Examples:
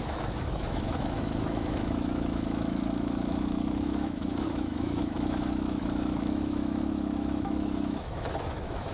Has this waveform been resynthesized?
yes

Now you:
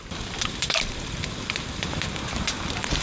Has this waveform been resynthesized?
yes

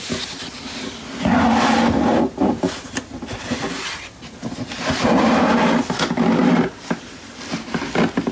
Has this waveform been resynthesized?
no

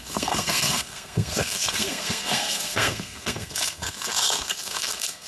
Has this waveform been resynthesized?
yes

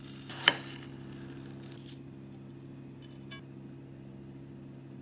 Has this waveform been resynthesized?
no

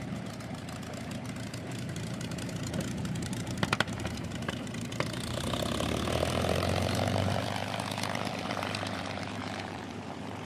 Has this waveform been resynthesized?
yes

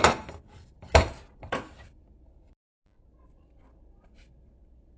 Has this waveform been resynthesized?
yes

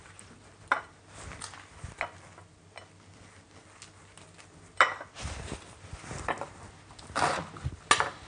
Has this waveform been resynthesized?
no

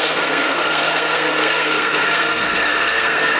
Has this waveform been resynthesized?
yes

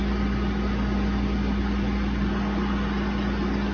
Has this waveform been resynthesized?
no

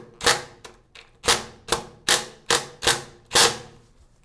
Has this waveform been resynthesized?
no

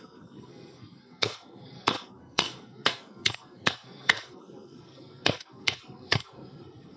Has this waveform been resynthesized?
yes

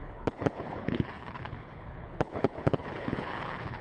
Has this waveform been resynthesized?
yes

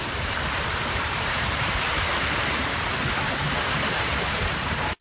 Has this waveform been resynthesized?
yes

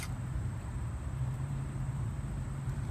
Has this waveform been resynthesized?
yes